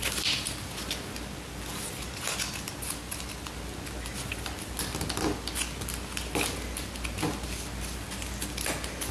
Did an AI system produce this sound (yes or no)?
no